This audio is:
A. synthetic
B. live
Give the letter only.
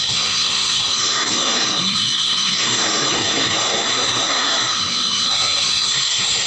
A